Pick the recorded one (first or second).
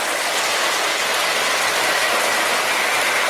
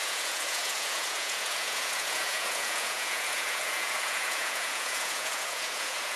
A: first